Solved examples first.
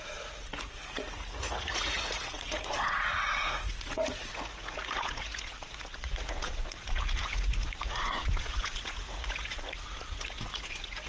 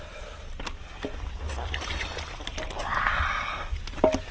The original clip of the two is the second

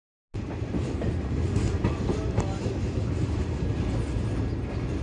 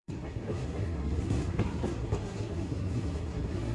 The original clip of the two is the first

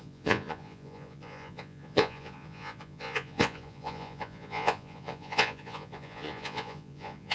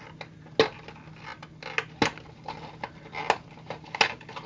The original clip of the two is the second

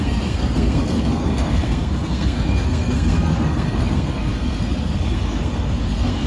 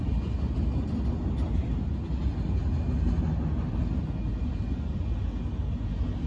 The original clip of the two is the second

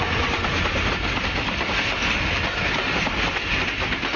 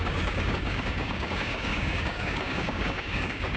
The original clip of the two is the first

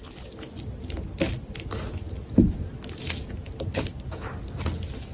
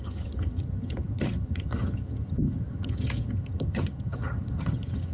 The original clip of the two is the first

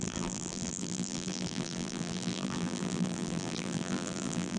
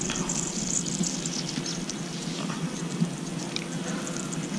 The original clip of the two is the second